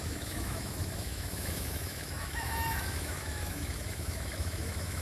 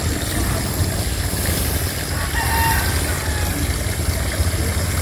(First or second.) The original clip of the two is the second